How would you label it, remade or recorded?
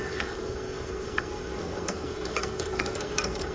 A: remade